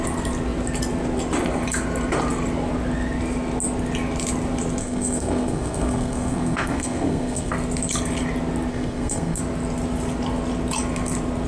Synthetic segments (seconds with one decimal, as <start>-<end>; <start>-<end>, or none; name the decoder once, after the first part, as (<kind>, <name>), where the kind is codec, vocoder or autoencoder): 4.8-7.5 (codec, SNAC); 8.7-9.4